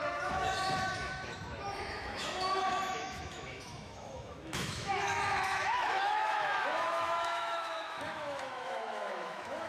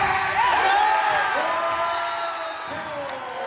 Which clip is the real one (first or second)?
second